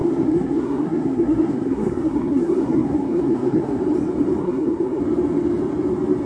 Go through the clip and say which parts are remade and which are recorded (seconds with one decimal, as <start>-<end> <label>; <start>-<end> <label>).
0.0-3.8 remade; 3.8-4.4 recorded; 4.4-5.0 remade; 5.0-6.3 recorded